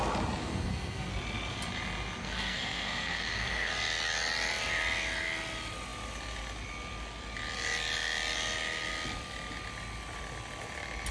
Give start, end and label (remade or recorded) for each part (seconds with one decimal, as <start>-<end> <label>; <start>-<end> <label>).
0.0-0.4 recorded; 0.4-1.1 remade; 1.1-2.2 recorded; 2.2-3.7 remade; 3.7-11.1 recorded